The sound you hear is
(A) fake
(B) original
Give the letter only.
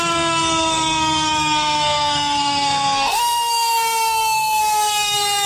A